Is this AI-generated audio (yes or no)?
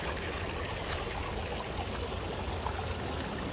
no